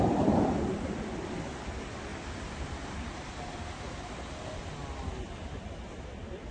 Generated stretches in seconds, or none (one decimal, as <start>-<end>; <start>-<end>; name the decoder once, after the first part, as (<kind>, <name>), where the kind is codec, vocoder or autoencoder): 0.0-2.1 (vocoder, BigVGAN v2); 3.8-4.8

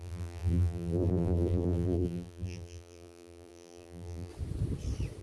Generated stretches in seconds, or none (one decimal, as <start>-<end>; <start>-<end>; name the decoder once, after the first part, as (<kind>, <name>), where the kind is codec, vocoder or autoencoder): 0.0-4.3 (vocoder, BigVGAN v2)